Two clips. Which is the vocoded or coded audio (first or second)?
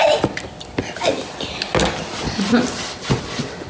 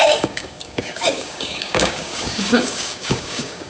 second